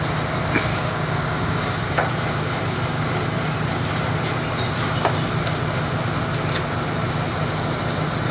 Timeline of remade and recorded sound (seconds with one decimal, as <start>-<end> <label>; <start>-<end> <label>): 0.0-0.7 recorded; 0.7-1.9 remade; 1.9-8.3 recorded